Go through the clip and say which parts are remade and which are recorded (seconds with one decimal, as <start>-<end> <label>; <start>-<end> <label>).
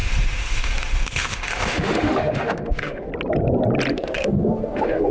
0.0-3.1 remade; 3.1-3.9 recorded; 3.9-5.1 remade